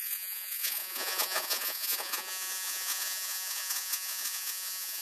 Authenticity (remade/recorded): remade